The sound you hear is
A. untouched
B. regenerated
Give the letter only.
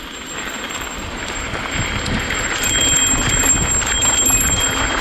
A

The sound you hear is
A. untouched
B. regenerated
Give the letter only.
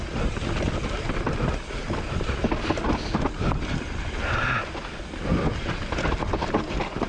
A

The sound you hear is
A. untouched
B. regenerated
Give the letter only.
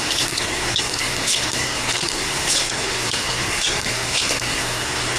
B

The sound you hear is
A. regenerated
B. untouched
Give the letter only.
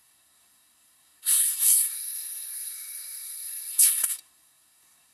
A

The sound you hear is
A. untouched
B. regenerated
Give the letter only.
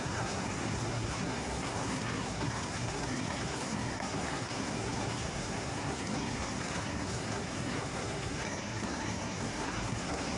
B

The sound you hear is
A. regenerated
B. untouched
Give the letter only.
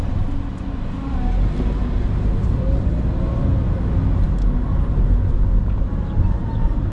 B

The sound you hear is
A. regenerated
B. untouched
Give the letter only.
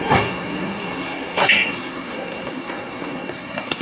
A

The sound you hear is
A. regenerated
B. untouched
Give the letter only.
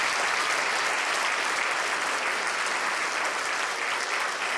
B